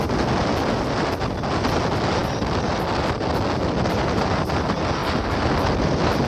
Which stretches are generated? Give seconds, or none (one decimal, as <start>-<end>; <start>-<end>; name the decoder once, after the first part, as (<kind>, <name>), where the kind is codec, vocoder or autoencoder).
none